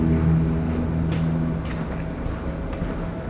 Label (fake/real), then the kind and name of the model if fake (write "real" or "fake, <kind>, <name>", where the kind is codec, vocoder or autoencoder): real